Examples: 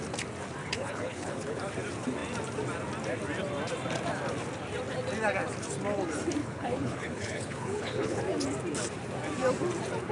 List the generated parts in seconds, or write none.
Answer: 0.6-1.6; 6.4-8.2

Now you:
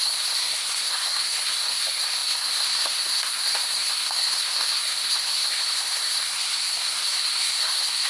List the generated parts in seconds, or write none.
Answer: 0.0-8.1